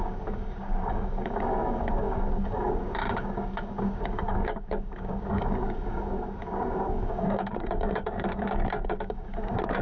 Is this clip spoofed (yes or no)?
yes